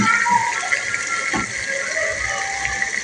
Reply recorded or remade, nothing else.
recorded